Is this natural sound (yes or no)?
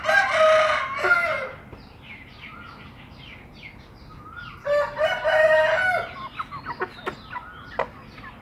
yes